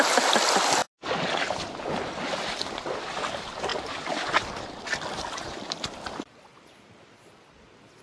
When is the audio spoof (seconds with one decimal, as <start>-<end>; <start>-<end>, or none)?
none